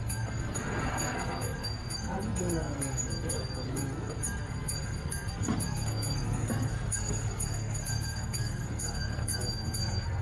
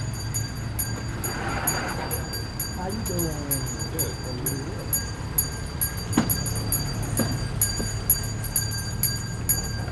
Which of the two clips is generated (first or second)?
first